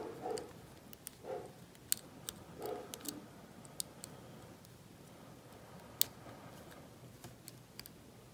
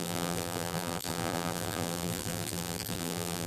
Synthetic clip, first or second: second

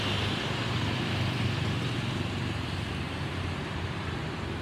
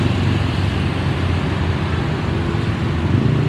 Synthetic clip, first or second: first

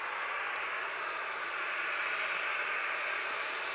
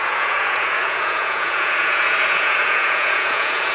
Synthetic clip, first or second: second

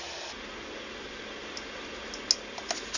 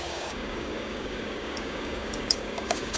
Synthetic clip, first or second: second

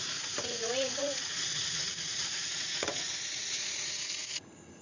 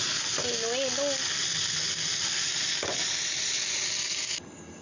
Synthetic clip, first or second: first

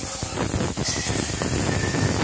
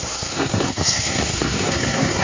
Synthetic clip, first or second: second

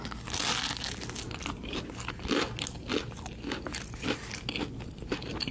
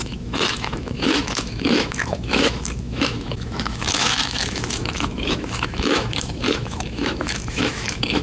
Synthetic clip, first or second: second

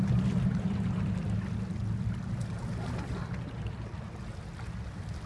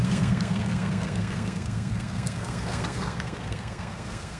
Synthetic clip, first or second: second